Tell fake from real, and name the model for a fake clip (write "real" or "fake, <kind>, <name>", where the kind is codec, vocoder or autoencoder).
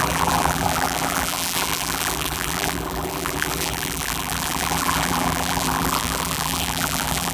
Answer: fake, vocoder, BigVGAN v2